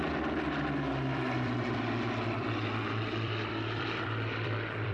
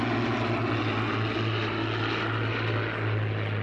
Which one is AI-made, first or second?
first